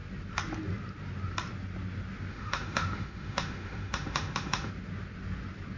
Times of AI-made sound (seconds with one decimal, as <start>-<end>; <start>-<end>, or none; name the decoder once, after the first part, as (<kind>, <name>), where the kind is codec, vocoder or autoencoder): 2.3-4.7 (autoencoder, DAC-VAE)